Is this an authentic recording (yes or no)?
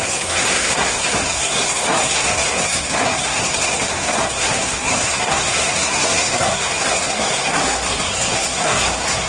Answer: no